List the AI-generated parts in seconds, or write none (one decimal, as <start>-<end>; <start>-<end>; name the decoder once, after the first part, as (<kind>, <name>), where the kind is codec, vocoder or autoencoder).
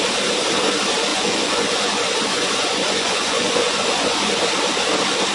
1.1-4.3 (vocoder, Vocos)